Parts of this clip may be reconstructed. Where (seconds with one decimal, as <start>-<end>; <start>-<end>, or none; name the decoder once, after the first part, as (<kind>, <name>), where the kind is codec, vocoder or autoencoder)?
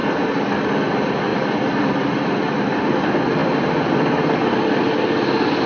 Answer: 1.3-3.0 (vocoder, BigVGAN v2); 3.4-4.8